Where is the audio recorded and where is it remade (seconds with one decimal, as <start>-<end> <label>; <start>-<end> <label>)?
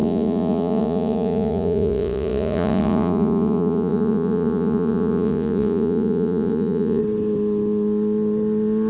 0.0-7.0 remade; 7.0-8.9 recorded